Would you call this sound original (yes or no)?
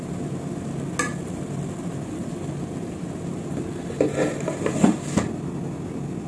yes